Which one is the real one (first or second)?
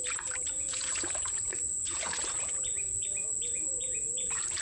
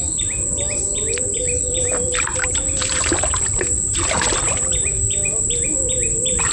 second